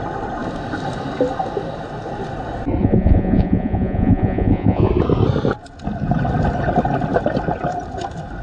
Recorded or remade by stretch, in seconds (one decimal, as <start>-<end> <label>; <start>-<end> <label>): 0.0-2.8 recorded; 2.8-4.9 remade; 4.9-8.4 recorded